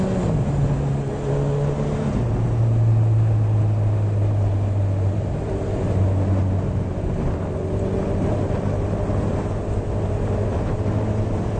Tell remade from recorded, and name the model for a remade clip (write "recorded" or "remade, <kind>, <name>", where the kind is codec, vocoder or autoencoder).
recorded